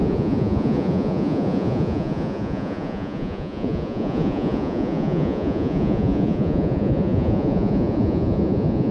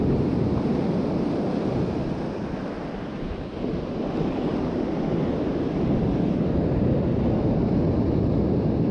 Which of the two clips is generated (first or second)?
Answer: first